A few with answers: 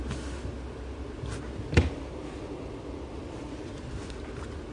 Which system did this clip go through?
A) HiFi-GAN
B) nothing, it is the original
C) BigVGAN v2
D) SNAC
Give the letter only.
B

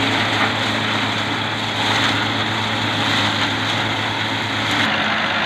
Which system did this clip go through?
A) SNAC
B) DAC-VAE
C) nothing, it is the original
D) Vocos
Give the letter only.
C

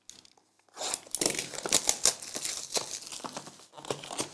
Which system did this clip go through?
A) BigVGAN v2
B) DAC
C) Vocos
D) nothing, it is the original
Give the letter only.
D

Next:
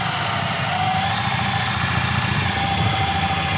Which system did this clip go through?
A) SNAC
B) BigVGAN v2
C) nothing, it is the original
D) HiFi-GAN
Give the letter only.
C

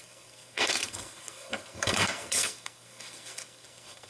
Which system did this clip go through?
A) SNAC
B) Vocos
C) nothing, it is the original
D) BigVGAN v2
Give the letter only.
A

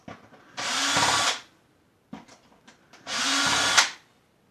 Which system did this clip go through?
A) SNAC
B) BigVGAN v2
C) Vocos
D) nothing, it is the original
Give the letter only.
D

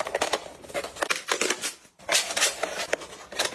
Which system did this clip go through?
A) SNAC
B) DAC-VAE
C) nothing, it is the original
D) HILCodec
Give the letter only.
C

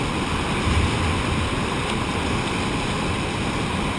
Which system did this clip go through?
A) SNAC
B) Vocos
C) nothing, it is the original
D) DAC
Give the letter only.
C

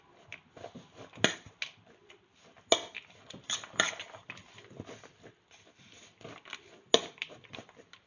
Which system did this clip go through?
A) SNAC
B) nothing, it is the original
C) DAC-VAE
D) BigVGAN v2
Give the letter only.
B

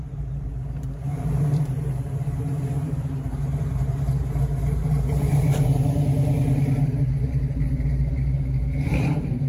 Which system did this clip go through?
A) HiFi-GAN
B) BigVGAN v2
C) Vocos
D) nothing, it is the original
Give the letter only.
B